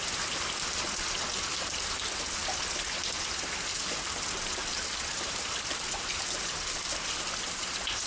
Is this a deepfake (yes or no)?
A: no